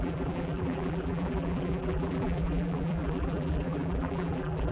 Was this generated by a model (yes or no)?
yes